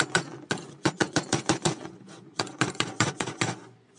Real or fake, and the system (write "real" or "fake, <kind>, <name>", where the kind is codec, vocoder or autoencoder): fake, vocoder, Vocos